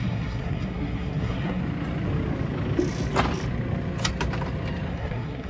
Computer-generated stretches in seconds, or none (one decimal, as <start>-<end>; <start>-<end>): 0.0-1.6; 4.9-5.5